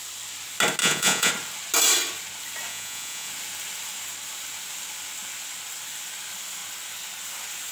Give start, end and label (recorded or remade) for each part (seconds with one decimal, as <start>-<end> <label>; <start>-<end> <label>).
0.0-0.8 recorded; 0.8-1.3 remade; 1.3-2.7 recorded; 2.7-3.3 remade; 3.3-7.7 recorded